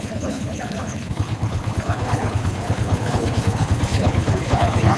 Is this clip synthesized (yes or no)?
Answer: yes